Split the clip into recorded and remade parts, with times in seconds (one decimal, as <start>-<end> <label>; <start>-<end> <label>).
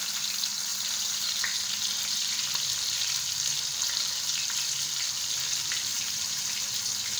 0.0-0.7 recorded; 0.7-1.4 remade; 1.4-5.9 recorded; 5.9-6.4 remade; 6.4-7.2 recorded